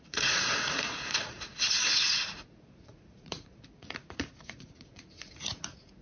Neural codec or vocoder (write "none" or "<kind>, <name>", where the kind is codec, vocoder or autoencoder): vocoder, Vocos